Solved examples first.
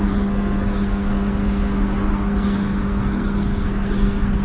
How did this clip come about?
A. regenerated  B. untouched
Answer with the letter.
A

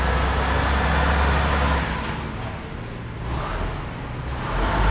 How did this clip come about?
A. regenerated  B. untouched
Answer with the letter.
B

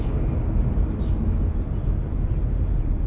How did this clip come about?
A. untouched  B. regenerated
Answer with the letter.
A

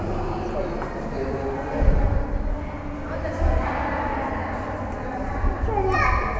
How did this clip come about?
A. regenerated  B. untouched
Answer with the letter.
B